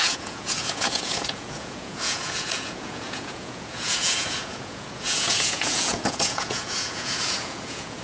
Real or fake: fake